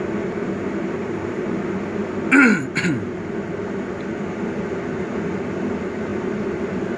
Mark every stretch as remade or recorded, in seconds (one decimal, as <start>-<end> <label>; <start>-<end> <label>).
0.0-7.0 recorded